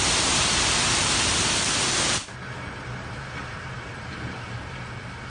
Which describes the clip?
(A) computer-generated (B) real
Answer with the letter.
B